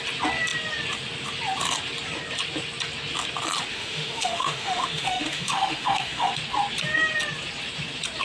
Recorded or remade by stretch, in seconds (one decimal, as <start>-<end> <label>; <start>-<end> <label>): 0.0-3.7 recorded; 3.7-6.3 remade; 6.3-8.2 recorded